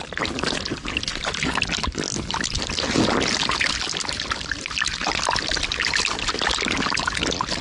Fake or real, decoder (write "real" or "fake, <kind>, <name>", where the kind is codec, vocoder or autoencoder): real